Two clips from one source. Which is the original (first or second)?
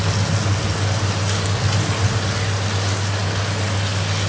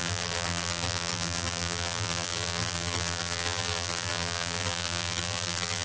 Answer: first